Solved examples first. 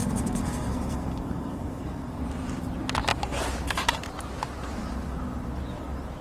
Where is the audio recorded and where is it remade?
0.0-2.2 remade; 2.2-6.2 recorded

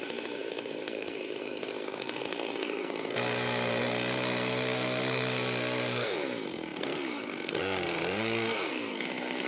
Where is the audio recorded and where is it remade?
0.0-9.5 remade

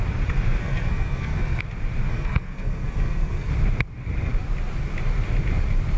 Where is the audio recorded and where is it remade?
0.0-0.6 recorded; 0.6-1.6 remade; 1.6-2.1 recorded; 2.1-3.5 remade; 3.5-6.0 recorded